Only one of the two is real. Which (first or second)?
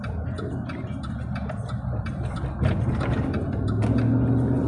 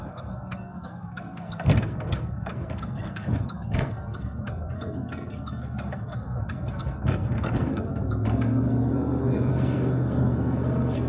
first